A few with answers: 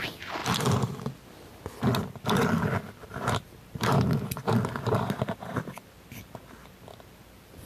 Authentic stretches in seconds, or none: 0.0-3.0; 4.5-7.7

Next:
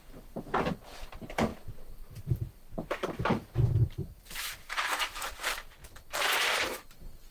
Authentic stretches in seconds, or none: 5.8-6.6